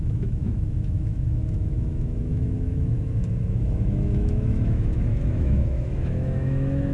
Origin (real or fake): fake